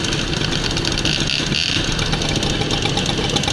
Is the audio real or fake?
real